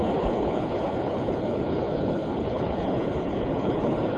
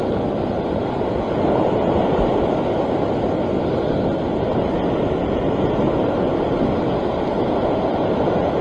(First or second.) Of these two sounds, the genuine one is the second